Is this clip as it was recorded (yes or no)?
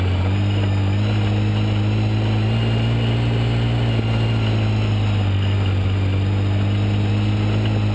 yes